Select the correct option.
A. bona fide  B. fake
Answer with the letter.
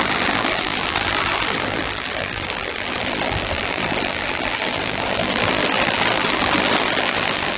B